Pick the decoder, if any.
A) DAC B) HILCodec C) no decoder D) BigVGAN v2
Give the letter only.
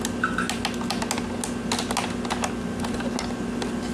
C